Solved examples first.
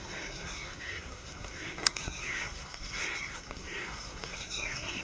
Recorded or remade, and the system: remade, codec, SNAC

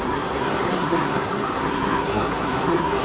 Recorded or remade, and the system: remade, codec, SNAC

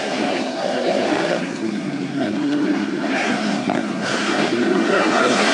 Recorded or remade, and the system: remade, codec, SNAC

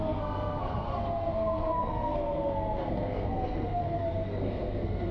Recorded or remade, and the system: remade, codec, SNAC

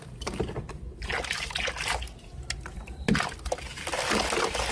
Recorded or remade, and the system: recorded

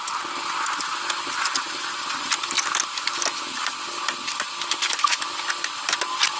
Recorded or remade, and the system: recorded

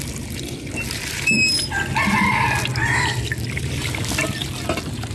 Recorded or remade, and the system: recorded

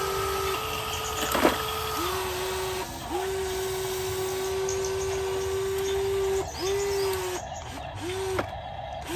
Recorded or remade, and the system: recorded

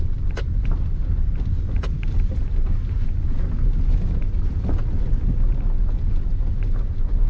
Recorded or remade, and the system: recorded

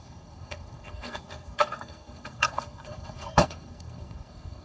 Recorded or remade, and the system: remade, codec, SNAC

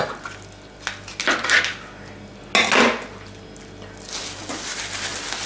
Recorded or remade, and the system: recorded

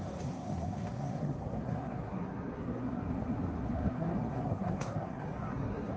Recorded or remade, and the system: remade, codec, SNAC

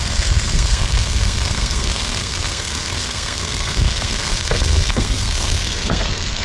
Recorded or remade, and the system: remade, codec, SNAC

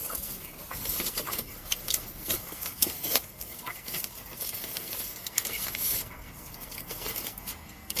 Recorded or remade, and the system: remade, codec, SNAC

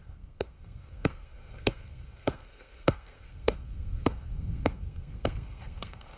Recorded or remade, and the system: remade, codec, SNAC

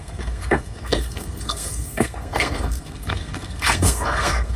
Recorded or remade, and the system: remade, codec, SNAC